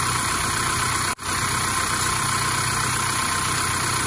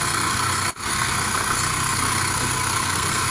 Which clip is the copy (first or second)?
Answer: second